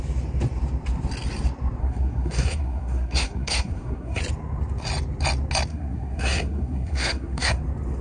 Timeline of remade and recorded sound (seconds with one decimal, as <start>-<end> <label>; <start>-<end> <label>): 0.0-1.8 recorded; 1.8-4.2 remade; 4.2-5.7 recorded; 5.7-7.6 remade; 7.6-8.0 recorded